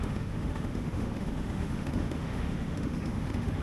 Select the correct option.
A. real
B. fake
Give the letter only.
B